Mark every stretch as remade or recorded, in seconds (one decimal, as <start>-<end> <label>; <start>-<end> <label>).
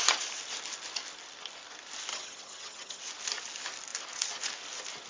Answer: 0.0-2.1 recorded; 2.1-3.0 remade; 3.0-5.1 recorded